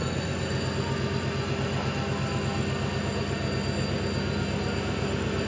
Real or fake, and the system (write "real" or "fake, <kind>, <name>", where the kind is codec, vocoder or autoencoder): real